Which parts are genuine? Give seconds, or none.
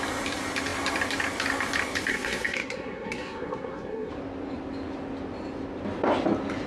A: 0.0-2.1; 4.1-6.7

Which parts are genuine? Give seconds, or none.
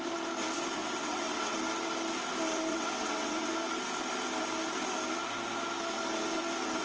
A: 0.0-0.8; 1.5-2.7; 3.5-6.8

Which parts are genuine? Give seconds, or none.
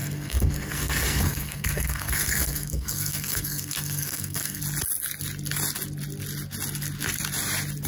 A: 4.6-7.9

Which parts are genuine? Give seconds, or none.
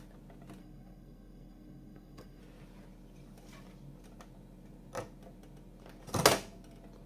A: 0.0-0.6; 2.4-7.1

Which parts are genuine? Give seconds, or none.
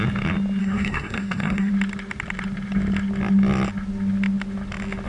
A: 0.0-0.6; 1.7-5.1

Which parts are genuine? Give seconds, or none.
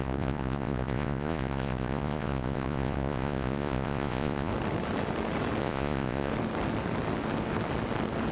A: 4.5-5.6; 6.3-8.3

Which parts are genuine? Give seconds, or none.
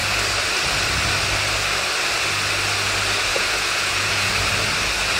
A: 0.0-3.3; 4.3-5.2